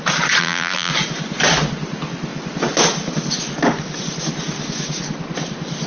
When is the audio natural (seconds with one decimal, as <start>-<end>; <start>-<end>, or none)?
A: 0.0-0.4; 0.9-5.9